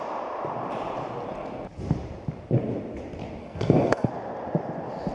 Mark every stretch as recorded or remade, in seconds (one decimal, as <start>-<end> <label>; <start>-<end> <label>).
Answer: 0.0-3.4 recorded; 3.4-4.1 remade; 4.1-5.1 recorded